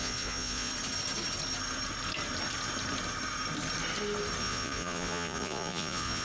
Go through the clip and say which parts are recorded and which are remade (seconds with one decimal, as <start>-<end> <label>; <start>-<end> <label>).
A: 0.0-0.7 remade; 0.7-4.4 recorded; 4.4-6.2 remade